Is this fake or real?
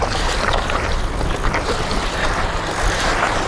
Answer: real